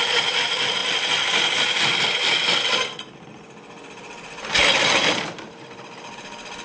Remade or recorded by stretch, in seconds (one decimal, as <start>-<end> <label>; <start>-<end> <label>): 0.0-4.6 recorded; 4.6-6.6 remade